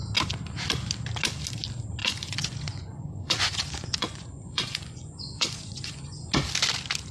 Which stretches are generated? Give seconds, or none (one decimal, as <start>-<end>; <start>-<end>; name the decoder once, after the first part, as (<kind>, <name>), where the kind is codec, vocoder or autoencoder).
2.0-6.3 (vocoder, Vocos)